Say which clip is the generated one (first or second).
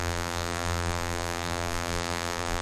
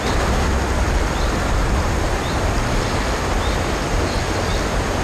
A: first